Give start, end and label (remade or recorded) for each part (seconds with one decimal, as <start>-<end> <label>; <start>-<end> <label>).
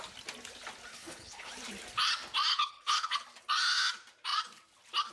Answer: 0.0-0.9 recorded; 0.9-1.5 remade; 1.5-2.5 recorded; 2.5-3.1 remade; 3.1-5.1 recorded